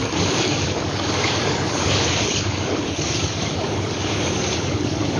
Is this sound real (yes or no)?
no